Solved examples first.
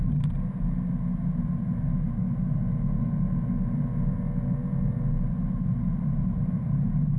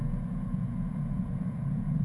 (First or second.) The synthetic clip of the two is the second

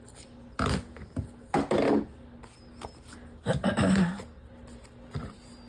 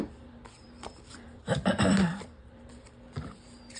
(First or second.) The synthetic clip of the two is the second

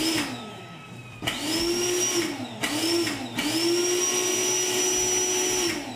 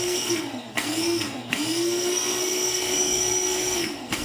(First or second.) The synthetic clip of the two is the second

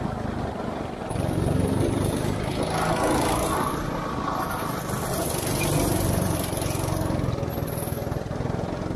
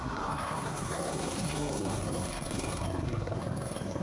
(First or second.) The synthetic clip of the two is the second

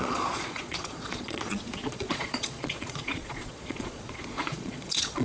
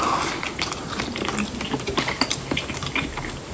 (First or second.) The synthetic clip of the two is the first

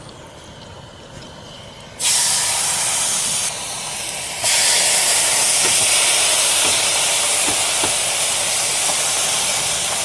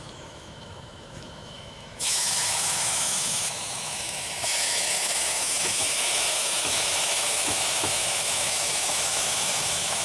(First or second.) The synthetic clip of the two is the second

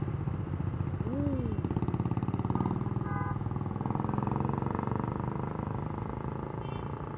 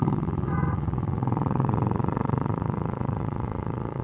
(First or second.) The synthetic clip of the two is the second